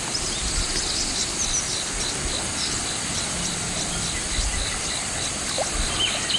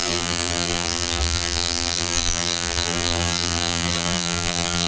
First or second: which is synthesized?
second